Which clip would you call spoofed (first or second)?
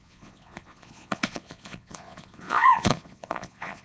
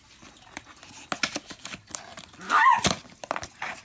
first